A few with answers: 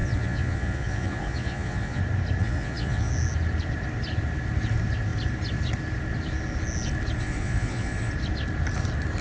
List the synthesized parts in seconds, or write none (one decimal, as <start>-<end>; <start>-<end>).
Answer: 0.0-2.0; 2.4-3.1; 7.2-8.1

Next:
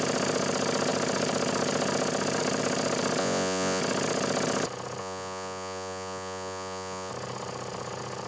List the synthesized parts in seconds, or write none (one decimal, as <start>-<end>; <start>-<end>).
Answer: 3.2-3.8; 5.0-7.1

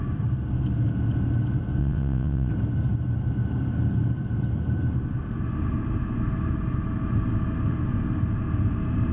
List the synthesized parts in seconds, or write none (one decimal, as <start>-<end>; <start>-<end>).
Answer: 1.8-2.5